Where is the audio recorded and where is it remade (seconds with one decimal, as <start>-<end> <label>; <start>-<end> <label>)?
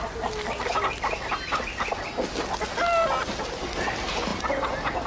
0.0-5.1 recorded